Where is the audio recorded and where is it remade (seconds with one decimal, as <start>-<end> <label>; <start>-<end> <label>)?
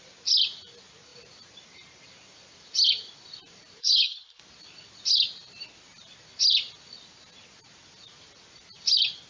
0.0-3.8 recorded; 3.8-4.4 remade; 4.4-9.3 recorded